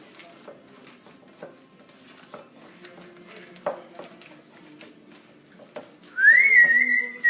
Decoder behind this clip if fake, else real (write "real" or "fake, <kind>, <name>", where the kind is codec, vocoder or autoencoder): real